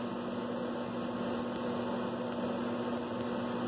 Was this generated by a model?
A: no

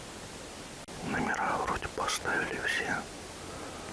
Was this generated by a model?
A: no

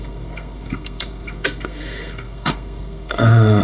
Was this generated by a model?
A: yes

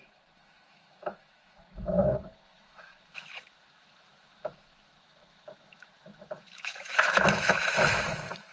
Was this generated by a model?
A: yes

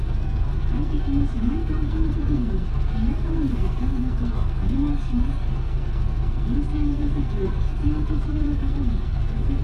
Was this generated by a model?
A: yes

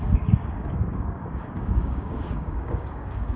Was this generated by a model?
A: yes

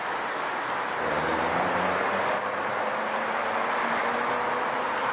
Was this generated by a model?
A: no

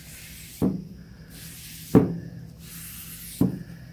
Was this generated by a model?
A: no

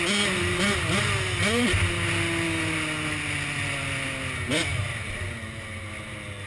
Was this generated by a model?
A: no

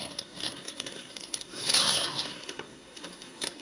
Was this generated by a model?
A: yes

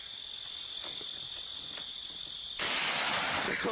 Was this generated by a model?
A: no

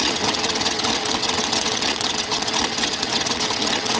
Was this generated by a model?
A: yes